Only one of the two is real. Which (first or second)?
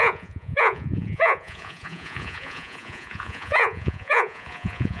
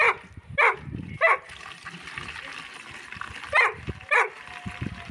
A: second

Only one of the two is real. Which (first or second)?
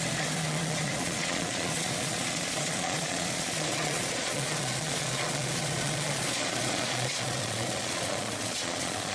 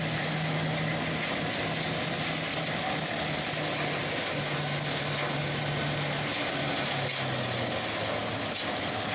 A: second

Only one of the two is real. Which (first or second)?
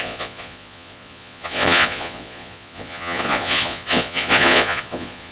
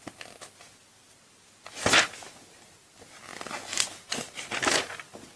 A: second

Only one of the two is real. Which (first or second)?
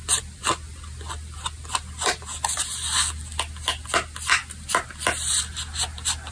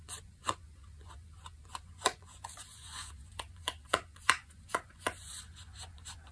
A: first